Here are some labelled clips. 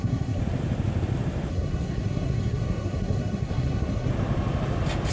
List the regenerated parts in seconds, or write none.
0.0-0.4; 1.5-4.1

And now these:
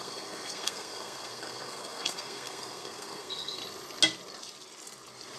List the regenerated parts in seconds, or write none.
0.0-3.6

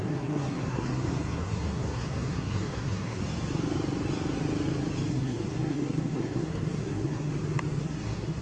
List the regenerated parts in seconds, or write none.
0.0-3.2; 5.1-7.3; 7.8-8.4

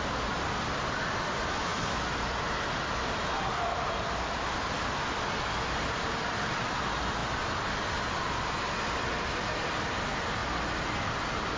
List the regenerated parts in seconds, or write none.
none

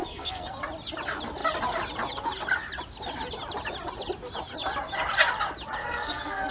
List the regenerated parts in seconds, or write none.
0.0-0.6; 5.8-6.5

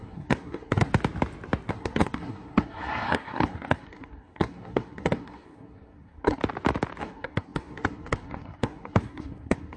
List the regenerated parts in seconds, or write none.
0.0-0.9; 1.7-6.4; 7.0-9.8